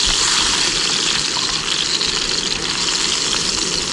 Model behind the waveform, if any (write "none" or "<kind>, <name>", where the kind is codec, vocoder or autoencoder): none